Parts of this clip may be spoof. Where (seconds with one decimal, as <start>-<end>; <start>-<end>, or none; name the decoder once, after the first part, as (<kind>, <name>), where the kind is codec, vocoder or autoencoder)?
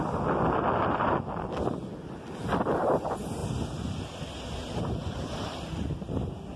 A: none